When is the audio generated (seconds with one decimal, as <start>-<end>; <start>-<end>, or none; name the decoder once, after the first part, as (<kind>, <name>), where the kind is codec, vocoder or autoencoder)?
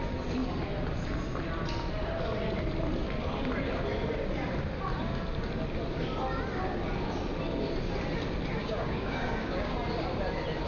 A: 8.6-9.7 (codec, DAC)